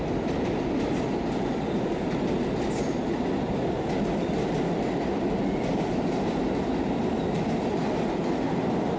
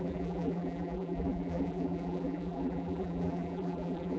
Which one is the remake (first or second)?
second